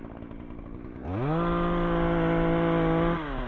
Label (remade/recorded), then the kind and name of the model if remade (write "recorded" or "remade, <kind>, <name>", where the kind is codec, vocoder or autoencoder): recorded